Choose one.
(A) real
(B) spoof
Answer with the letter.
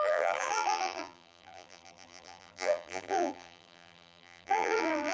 B